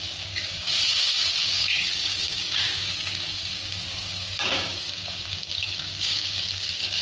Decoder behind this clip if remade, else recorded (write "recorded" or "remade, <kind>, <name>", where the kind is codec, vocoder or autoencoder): remade, codec, DAC